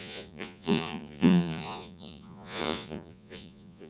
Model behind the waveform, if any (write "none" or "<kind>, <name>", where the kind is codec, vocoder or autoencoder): vocoder, Vocos